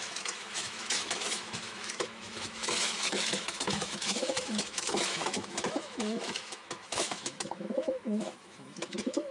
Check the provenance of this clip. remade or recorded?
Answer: remade